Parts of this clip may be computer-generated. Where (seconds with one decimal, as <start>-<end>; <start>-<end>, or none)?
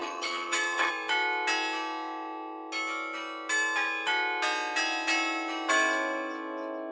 0.0-0.9